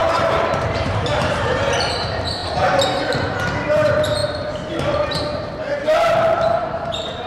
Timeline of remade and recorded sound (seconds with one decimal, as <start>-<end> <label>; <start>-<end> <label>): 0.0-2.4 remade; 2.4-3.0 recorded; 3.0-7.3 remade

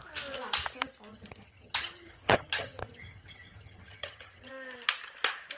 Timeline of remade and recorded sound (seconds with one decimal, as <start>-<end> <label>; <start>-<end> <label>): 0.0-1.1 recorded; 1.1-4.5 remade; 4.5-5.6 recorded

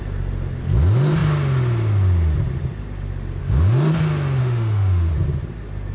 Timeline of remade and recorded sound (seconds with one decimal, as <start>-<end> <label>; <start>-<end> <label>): 0.0-3.4 recorded; 3.4-3.9 remade; 3.9-4.4 recorded; 4.4-5.1 remade; 5.1-5.9 recorded

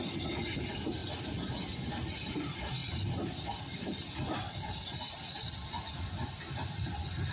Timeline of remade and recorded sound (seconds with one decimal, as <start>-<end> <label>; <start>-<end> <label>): 0.0-7.3 remade

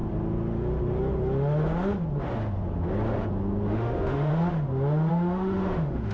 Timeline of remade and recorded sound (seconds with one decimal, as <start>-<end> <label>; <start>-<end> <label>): 0.0-3.7 recorded; 3.7-4.3 remade; 4.3-5.1 recorded; 5.1-6.1 remade

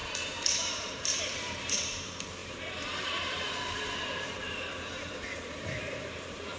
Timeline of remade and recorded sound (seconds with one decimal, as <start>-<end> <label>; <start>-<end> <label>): 0.0-6.6 remade